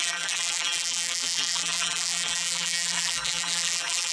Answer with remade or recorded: remade